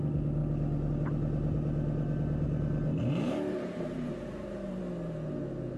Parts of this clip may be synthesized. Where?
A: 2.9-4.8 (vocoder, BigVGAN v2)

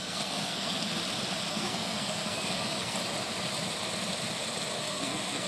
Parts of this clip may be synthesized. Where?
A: 0.0-0.9 (codec, SNAC); 1.5-3.0; 4.8-5.5

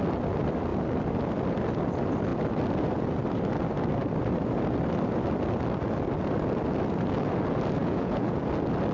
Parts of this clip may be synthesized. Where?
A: 7.8-8.4 (vocoder, Vocos)

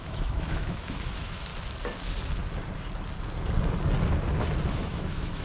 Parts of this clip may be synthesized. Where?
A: 0.0-1.5 (autoencoder, DAC-VAE); 4.7-5.4